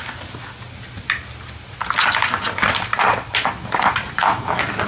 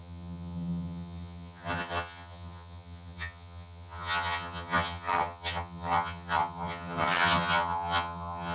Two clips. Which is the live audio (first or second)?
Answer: first